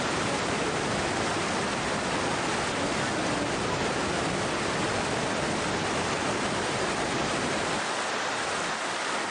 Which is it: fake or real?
real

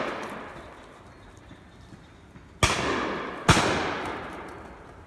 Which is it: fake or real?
real